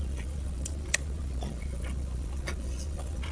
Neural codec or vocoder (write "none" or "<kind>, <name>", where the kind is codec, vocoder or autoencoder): vocoder, Vocos